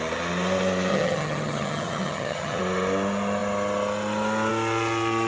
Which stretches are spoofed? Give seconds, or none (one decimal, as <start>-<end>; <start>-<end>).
0.9-2.6